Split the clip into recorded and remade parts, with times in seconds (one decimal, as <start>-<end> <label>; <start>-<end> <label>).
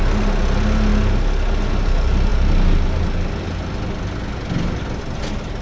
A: 0.0-5.6 recorded